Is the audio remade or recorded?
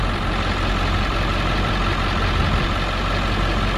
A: recorded